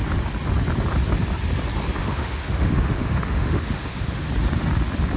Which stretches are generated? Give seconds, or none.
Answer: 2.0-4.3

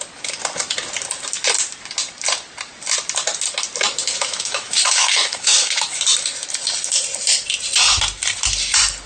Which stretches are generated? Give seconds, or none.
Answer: 4.0-6.0

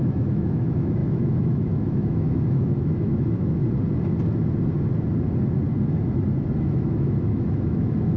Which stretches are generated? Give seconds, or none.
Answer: 0.0-3.6; 6.6-8.2

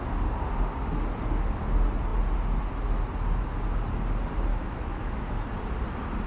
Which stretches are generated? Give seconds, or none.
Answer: 4.5-5.4

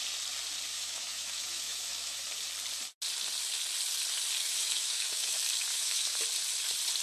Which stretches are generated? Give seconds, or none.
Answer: 0.7-2.2; 4.4-5.3; 5.7-6.2

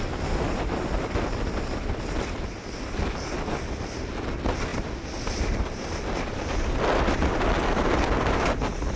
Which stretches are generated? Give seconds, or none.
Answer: none

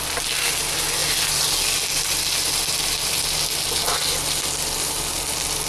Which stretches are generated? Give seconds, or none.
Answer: none

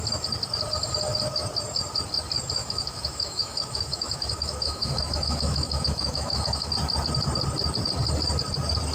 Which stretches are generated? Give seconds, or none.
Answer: 2.6-6.7